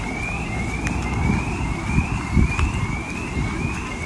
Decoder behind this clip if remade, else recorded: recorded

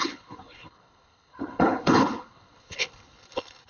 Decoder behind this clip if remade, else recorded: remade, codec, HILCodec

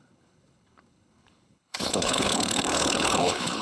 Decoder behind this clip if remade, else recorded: remade, codec, HILCodec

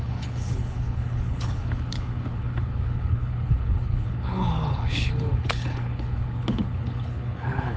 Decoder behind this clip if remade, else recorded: remade, codec, HILCodec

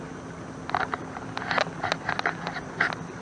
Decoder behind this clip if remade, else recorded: recorded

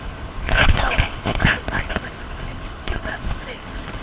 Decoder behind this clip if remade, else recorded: remade, codec, HILCodec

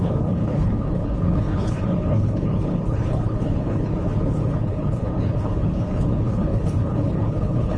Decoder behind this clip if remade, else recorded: remade, codec, HILCodec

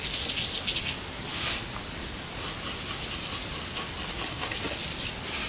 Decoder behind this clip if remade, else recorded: recorded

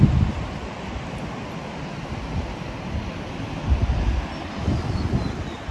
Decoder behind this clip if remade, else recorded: recorded